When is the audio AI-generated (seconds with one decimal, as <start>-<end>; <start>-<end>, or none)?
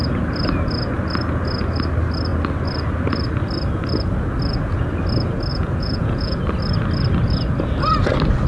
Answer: 5.5-6.4